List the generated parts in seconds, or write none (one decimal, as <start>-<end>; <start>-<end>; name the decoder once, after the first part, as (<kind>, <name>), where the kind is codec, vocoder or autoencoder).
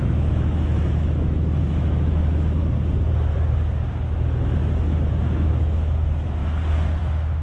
0.0-2.6 (autoencoder, DAC-VAE); 5.1-6.4; 7.0-7.4